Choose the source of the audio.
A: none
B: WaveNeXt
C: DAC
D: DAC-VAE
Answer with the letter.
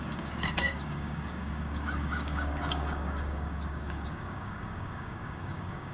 C